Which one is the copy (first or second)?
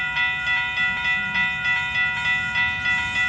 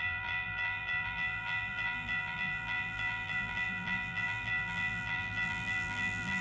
second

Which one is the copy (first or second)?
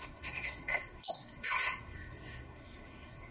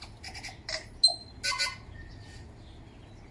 first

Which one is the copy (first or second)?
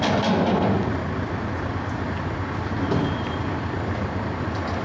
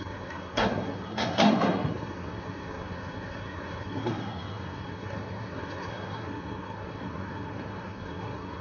second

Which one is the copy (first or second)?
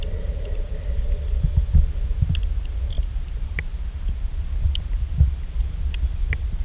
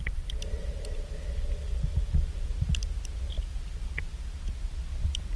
first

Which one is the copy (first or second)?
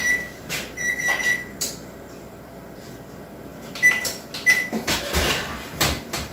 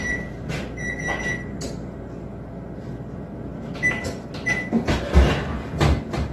first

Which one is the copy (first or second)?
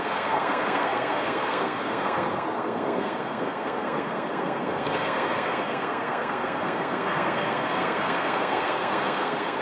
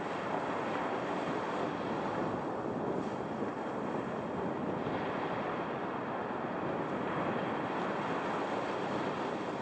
first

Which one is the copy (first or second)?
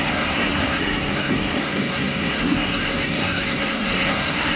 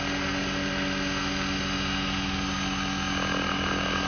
first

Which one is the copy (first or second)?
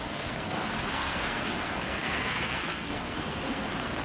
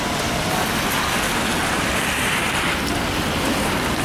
first